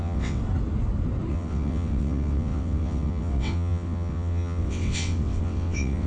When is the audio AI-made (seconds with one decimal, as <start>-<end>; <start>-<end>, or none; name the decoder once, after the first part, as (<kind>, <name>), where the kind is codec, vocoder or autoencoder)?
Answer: 0.0-0.4 (vocoder, WaveNeXt); 1.3-6.1